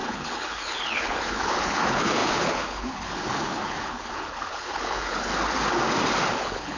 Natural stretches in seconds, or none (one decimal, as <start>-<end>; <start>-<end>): 5.3-6.3